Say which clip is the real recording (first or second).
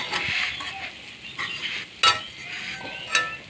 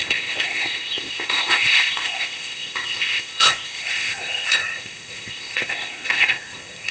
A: first